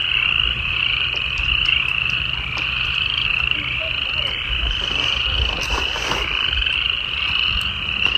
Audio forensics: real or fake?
real